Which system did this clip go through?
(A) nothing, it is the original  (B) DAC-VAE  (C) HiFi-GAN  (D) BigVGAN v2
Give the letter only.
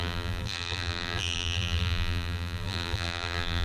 D